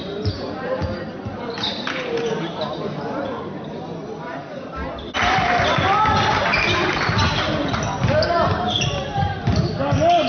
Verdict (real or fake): real